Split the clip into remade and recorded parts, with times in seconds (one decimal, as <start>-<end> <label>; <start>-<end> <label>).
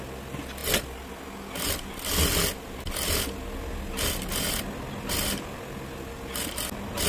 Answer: 0.0-7.1 recorded